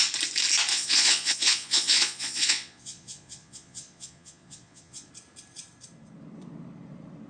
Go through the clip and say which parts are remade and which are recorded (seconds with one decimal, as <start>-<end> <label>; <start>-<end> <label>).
0.0-0.7 recorded; 0.7-5.1 remade; 5.1-7.3 recorded